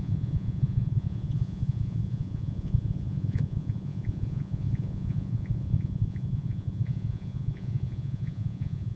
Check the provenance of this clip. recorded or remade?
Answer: remade